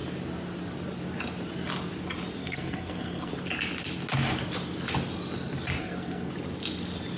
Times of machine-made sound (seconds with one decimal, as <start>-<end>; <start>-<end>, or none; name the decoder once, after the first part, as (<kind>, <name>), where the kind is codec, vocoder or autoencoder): 2.4-3.3 (codec, SNAC); 5.8-6.3